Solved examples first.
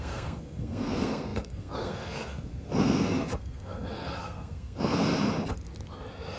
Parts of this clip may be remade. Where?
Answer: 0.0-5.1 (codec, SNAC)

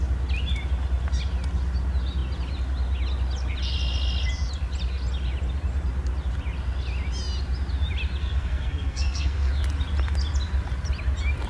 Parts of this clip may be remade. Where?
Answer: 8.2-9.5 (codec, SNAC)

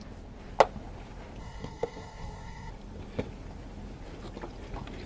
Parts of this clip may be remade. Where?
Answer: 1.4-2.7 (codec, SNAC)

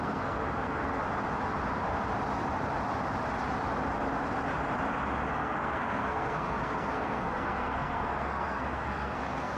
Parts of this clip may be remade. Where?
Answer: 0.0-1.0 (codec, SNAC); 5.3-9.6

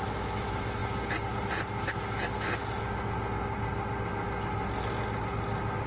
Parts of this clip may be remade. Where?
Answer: none

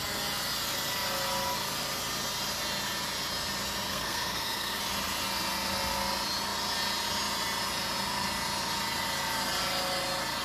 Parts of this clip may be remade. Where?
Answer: 3.9-4.8 (codec, SNAC)

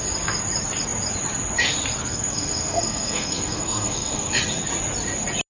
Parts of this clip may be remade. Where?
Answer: 2.1-4.4 (codec, SNAC)